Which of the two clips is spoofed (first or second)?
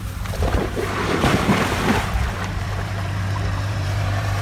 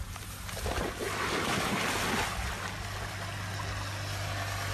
first